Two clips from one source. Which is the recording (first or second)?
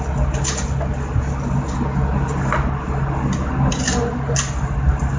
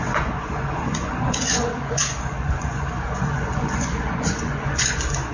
first